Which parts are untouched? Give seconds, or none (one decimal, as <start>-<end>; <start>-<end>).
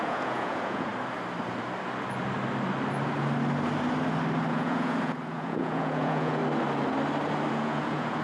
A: 0.9-4.5; 6.4-7.5